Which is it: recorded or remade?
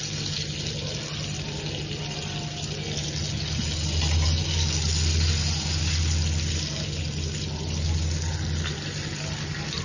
recorded